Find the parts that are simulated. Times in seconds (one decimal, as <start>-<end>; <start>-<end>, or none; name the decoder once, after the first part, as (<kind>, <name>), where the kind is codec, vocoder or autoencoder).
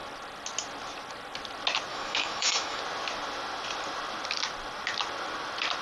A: 1.9-2.8 (autoencoder, DAC-VAE)